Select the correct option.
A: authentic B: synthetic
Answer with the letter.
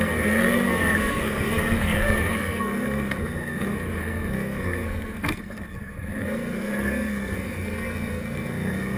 B